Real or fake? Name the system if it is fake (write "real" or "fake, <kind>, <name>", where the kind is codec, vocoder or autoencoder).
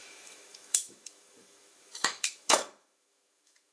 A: fake, autoencoder, DAC-VAE